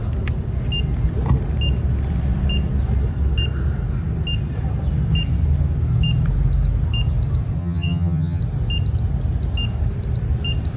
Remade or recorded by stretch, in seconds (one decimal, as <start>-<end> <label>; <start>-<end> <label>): 0.0-7.6 recorded; 7.6-8.4 remade; 8.4-10.8 recorded